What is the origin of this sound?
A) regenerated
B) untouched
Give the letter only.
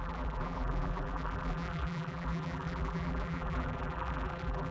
A